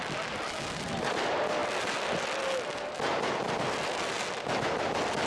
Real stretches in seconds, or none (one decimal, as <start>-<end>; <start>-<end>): 0.0-5.3